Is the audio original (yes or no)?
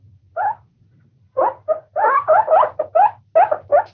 yes